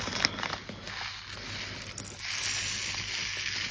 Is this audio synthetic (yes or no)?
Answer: no